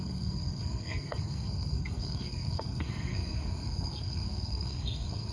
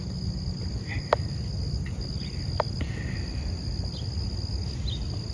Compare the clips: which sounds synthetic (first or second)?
first